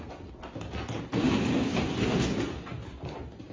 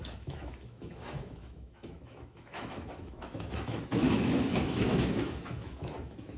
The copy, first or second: second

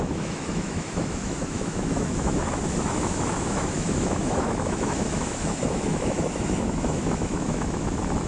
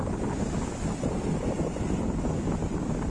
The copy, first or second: first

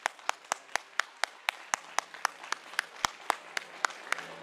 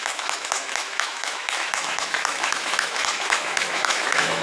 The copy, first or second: second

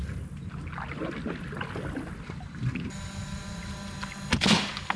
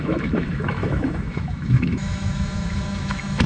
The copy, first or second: second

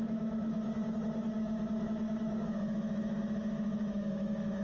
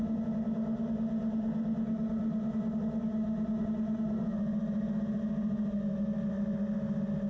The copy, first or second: first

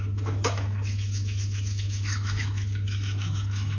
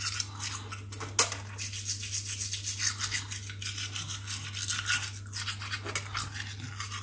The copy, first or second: first